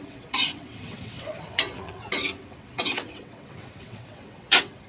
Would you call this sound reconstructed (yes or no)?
yes